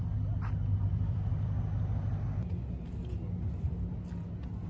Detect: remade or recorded recorded